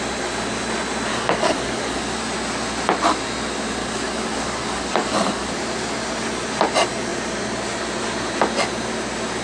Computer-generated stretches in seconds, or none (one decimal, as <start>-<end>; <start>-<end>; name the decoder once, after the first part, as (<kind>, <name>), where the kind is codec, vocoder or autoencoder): 1.1-2.0 (codec, DAC); 3.8-5.5